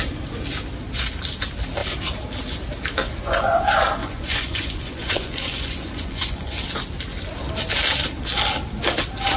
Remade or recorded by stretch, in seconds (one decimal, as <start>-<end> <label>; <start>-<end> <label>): 0.0-3.0 recorded; 3.0-3.6 remade; 3.6-4.0 recorded; 4.0-6.6 remade; 6.6-9.4 recorded